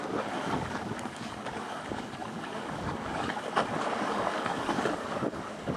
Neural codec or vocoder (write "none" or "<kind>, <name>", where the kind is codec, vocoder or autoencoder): codec, DAC